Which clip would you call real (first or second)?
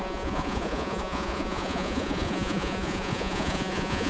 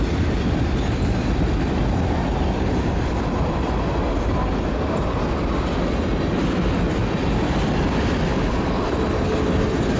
second